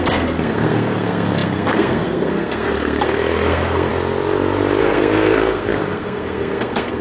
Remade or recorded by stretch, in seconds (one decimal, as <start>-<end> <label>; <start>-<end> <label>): 0.0-3.9 remade; 3.9-4.8 recorded; 4.8-7.0 remade